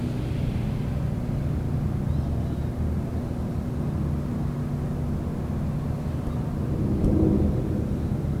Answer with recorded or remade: remade